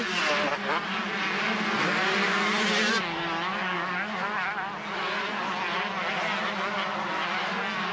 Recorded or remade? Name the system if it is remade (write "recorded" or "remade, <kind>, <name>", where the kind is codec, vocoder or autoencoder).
recorded